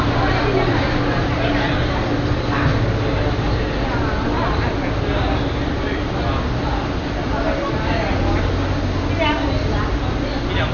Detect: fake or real real